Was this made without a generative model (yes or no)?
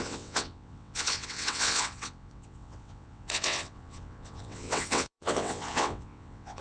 no